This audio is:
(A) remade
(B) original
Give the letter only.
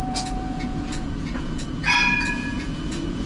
A